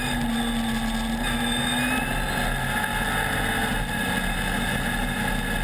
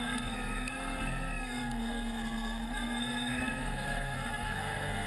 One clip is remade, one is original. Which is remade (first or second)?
second